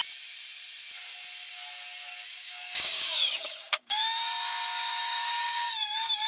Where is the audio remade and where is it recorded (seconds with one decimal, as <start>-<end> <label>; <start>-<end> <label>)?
0.0-2.4 recorded; 2.4-6.3 remade